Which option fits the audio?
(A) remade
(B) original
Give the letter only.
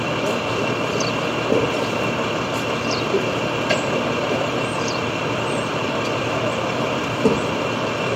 A